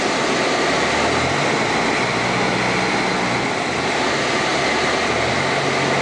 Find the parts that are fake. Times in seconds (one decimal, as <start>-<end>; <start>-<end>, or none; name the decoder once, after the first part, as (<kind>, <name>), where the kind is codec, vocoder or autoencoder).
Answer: none